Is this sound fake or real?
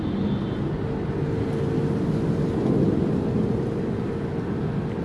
real